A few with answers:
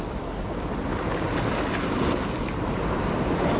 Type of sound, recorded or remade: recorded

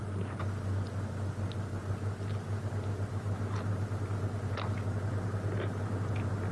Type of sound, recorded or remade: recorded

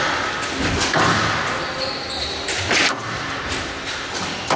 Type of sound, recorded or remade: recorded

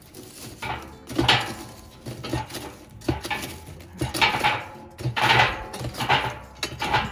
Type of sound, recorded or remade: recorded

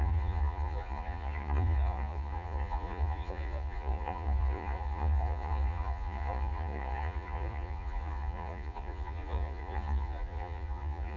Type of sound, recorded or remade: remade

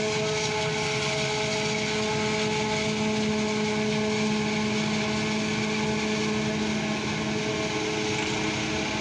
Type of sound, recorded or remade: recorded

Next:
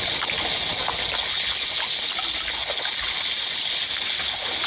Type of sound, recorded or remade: recorded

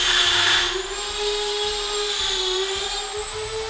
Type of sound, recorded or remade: remade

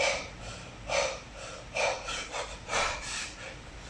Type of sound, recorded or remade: remade